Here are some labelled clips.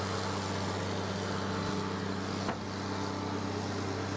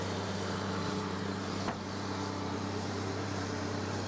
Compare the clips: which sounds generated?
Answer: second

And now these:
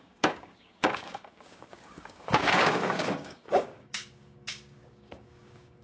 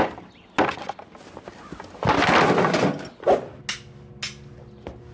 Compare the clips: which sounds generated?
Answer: first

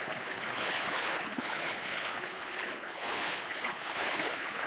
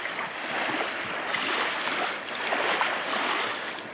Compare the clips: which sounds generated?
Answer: first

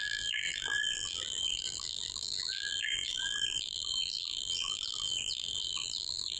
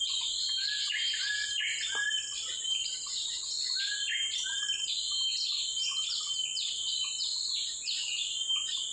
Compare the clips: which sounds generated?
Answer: first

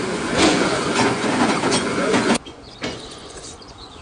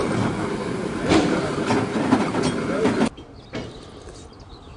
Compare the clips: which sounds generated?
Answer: first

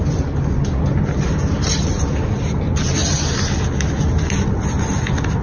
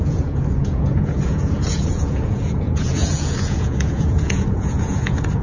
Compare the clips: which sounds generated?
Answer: second